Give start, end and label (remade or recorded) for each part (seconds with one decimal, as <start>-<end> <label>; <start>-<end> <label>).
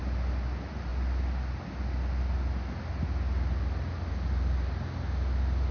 0.0-5.7 recorded